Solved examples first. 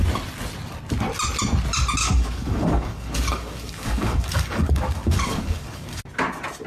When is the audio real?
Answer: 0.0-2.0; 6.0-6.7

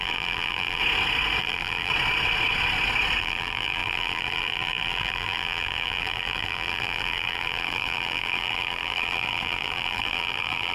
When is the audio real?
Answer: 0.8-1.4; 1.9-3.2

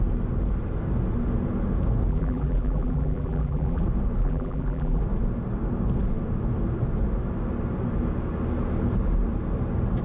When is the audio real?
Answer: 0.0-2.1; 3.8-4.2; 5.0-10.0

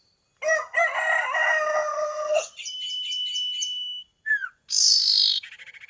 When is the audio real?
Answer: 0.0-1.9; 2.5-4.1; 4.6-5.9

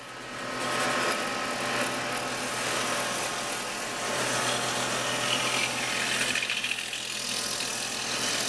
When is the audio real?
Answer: 0.0-8.5

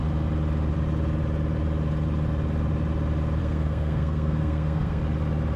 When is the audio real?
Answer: 0.0-3.4; 5.0-5.6